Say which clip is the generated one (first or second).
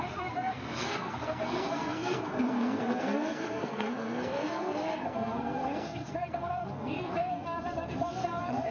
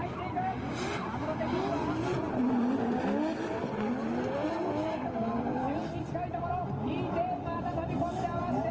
first